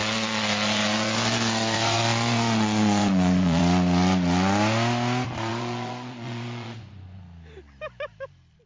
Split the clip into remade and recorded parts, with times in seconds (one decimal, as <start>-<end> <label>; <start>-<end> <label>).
0.0-3.6 remade; 3.6-5.5 recorded; 5.5-7.2 remade; 7.2-8.7 recorded